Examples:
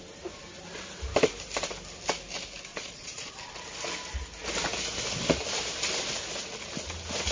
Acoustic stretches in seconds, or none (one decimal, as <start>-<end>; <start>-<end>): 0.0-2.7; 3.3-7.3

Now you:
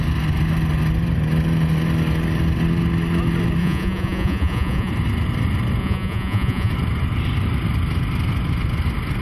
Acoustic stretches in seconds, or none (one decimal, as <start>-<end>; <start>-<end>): 0.0-3.6; 4.9-5.8; 6.7-9.2

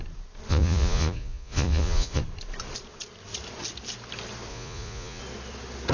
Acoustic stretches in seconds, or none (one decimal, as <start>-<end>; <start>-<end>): 0.0-0.5; 2.2-4.5; 5.2-5.9